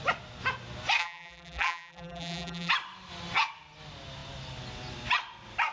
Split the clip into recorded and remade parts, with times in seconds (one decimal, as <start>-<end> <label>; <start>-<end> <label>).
0.0-1.0 recorded; 1.0-2.7 remade; 2.7-5.7 recorded

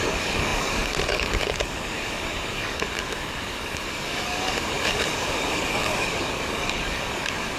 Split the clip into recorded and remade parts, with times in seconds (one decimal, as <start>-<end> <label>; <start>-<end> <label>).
0.0-7.6 remade